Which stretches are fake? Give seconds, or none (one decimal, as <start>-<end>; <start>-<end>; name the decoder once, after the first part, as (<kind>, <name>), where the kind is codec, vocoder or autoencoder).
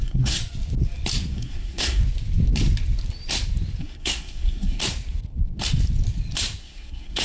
0.0-0.4 (codec, SNAC); 1.3-2.0; 3.8-4.8; 6.6-7.2